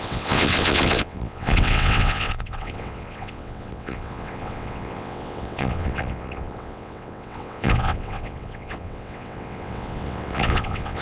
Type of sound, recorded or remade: remade